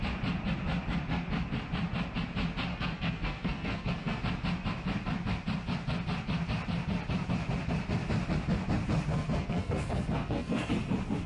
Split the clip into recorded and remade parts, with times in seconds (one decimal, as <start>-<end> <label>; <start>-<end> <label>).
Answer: 0.0-2.7 recorded; 2.7-4.2 remade; 4.2-9.1 recorded; 9.1-10.7 remade; 10.7-11.3 recorded